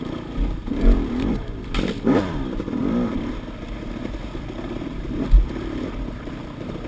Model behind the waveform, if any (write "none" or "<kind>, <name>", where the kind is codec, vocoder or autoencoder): vocoder, BigVGAN v2